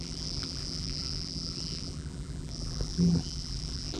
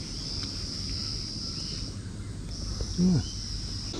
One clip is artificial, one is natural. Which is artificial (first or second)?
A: first